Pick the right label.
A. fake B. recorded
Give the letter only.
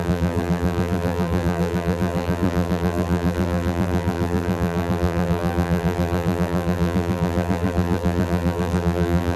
A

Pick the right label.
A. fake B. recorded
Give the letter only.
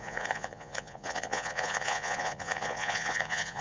A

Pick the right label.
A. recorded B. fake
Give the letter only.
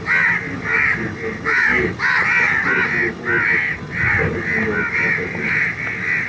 A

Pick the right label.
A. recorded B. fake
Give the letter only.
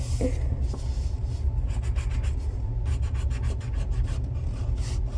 A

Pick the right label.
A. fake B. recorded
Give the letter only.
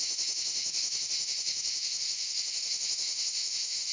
A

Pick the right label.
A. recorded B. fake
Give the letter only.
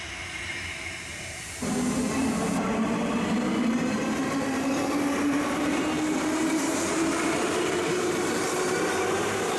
B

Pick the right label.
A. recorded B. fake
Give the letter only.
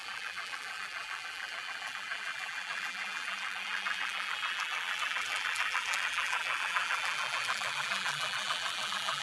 B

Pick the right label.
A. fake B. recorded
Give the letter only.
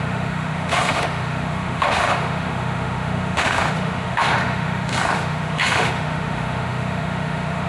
A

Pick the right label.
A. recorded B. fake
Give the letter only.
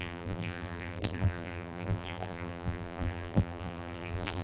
B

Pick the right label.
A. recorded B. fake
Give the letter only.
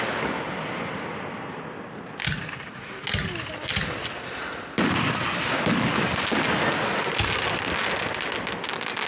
A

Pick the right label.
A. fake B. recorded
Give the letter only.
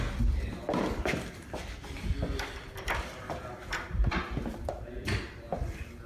A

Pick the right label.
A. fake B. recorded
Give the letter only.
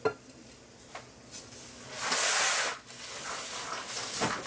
B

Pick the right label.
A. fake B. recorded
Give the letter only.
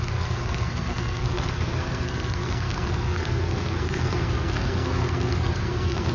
A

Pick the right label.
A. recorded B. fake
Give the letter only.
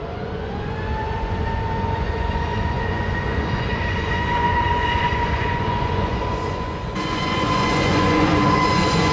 B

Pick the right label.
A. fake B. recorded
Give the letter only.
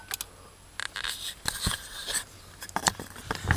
B